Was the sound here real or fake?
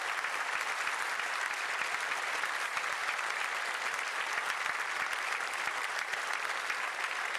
real